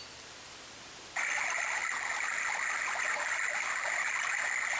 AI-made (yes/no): no